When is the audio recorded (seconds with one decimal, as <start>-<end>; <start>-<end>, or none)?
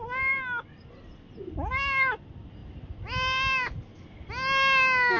0.0-5.2